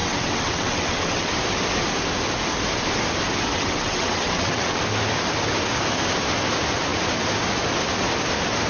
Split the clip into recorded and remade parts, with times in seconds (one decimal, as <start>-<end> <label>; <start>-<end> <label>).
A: 0.0-1.3 remade; 1.3-3.5 recorded; 3.5-4.8 remade; 4.8-8.7 recorded